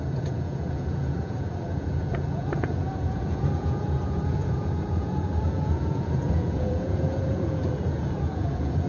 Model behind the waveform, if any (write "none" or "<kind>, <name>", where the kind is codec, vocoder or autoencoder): vocoder, Vocos